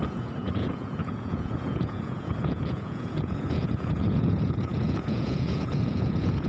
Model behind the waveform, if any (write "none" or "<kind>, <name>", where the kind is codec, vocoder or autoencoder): vocoder, Vocos